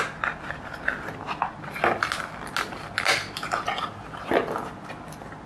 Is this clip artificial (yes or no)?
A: no